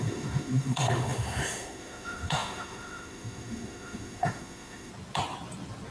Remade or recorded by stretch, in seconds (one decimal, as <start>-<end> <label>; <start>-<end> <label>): 0.0-4.9 remade; 4.9-5.9 recorded